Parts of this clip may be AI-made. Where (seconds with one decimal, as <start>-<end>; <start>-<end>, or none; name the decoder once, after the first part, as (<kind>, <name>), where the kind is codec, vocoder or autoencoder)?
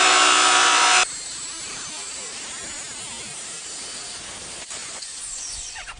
4.8-6.0 (vocoder, Vocos)